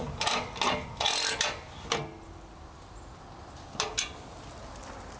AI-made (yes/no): no